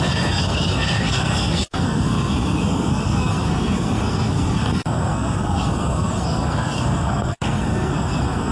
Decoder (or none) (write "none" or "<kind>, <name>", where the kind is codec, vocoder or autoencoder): codec, SNAC